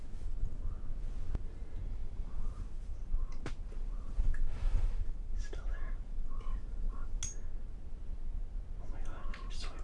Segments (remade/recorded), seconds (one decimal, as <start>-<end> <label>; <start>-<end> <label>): 0.0-2.0 recorded; 2.0-7.2 remade; 7.2-9.8 recorded